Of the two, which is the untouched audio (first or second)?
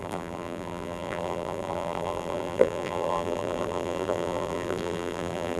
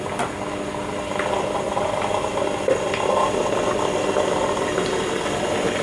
second